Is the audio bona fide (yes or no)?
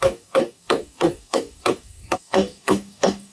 no